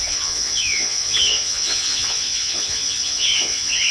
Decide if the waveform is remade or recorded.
remade